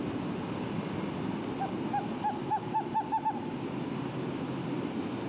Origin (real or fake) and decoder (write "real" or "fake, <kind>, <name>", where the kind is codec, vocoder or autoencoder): real